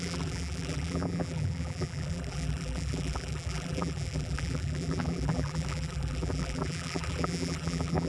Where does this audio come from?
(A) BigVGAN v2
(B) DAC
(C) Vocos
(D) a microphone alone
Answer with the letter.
A